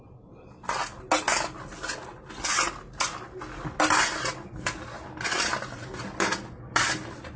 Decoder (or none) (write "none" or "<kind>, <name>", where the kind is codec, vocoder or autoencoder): none